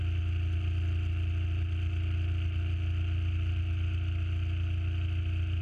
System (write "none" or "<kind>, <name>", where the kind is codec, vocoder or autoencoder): none